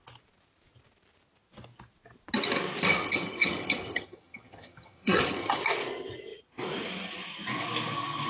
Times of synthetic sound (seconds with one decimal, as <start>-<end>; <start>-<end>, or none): 2.9-5.6